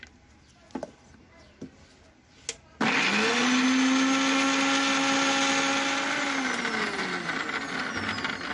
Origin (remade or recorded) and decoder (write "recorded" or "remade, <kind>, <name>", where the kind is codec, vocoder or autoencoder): recorded